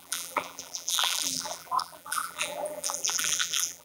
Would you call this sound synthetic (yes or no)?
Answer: yes